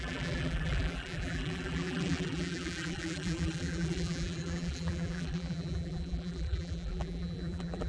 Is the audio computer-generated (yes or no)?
yes